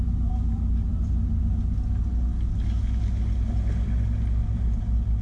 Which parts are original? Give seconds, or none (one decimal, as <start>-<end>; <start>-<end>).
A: 0.0-0.9; 2.1-5.2